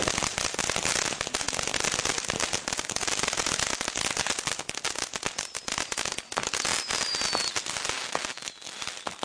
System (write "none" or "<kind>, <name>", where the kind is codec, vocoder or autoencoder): none